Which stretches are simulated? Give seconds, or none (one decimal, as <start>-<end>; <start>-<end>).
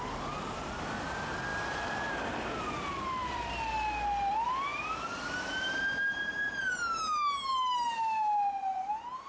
1.5-2.6; 3.2-3.7; 7.5-9.3